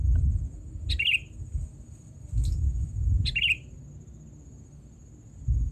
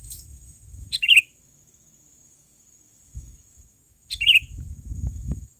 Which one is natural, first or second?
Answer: first